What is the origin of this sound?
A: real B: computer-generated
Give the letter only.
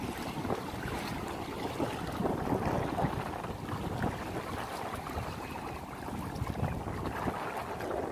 A